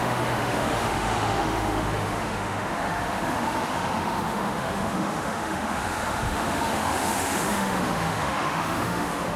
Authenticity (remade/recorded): remade